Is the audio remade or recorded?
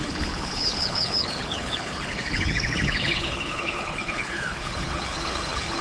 remade